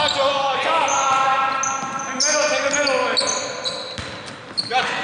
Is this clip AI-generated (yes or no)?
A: no